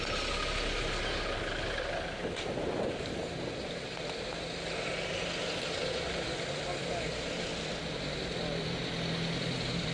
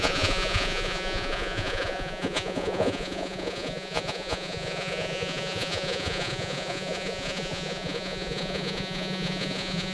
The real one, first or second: first